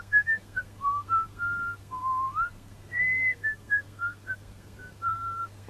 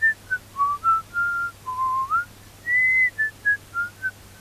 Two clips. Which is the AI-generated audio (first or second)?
first